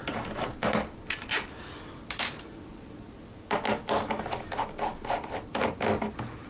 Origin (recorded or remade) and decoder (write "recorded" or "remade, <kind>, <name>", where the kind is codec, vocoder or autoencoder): recorded